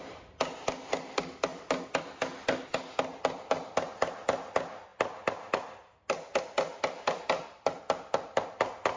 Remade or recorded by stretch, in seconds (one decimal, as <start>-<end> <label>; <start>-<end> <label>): 0.0-9.0 recorded